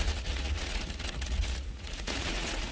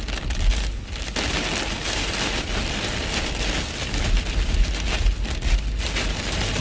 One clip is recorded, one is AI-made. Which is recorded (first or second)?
second